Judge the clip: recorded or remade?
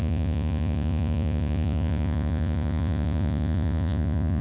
remade